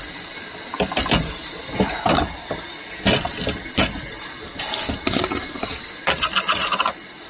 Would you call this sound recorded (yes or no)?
yes